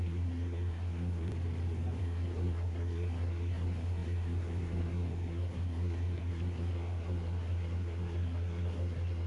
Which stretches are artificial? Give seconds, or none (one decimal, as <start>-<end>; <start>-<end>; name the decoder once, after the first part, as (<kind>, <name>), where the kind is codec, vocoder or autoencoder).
0.0-1.3 (codec, SNAC); 2.0-9.3